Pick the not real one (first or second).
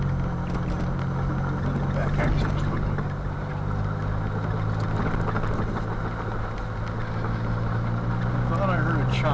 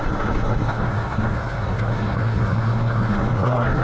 second